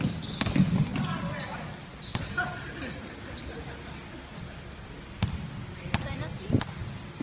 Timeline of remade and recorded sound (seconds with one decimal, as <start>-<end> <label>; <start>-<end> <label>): 0.0-0.9 recorded; 0.9-2.8 remade; 2.8-4.3 recorded; 4.3-5.4 remade; 5.4-7.2 recorded